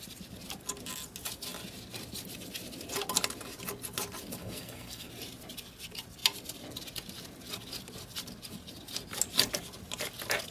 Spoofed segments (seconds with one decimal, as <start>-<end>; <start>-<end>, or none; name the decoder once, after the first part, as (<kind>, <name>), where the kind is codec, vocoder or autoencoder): 4.4-5.1 (codec, SNAC)